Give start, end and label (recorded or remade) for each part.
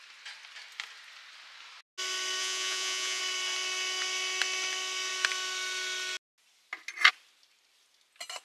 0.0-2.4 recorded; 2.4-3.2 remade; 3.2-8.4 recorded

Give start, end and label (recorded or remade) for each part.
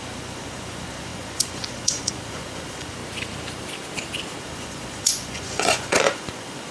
0.0-3.0 remade; 3.0-4.4 recorded; 4.4-6.7 remade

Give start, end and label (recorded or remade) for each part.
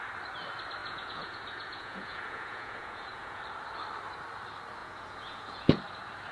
0.0-0.8 recorded; 0.8-3.4 remade; 3.4-4.8 recorded; 4.8-5.8 remade; 5.8-6.3 recorded